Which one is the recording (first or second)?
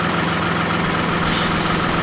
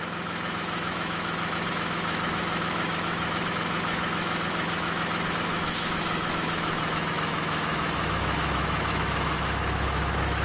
first